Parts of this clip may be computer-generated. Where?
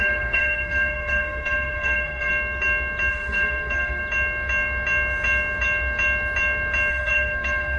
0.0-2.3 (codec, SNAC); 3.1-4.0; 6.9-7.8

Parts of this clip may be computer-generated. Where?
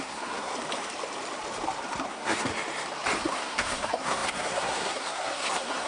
0.0-0.5 (codec, SNAC); 2.1-2.5; 3.2-5.9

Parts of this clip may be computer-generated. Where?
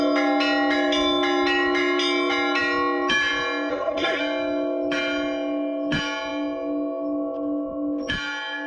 3.7-4.2 (codec, SNAC)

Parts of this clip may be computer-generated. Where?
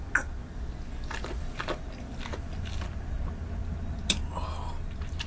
none